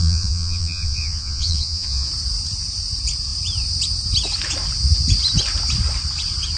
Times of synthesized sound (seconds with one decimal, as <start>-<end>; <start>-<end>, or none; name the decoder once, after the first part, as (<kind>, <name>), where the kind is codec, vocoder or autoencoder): 0.0-2.1 (vocoder, Vocos)

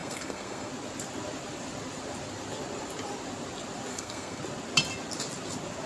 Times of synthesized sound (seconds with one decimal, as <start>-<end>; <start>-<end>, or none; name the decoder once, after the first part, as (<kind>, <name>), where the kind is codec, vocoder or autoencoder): 0.0-0.7 (codec, SNAC); 3.9-4.4